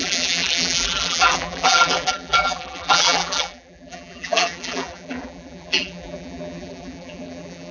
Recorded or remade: remade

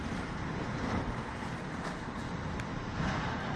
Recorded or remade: remade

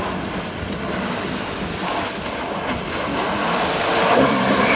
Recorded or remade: remade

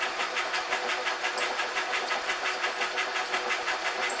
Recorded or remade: remade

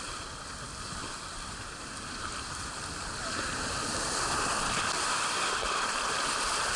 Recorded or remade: remade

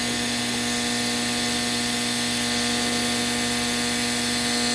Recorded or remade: recorded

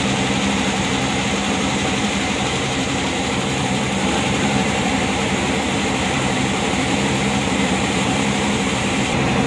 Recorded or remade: remade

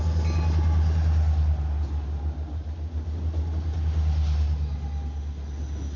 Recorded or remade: recorded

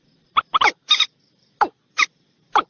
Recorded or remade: remade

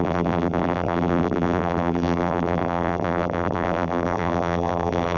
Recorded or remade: remade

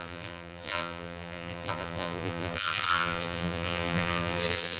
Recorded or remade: remade